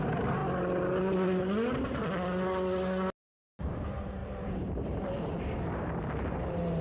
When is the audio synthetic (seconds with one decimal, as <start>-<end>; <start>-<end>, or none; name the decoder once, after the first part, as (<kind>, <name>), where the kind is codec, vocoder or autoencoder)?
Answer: 0.0-0.4 (vocoder, BigVGAN v2); 3.6-6.8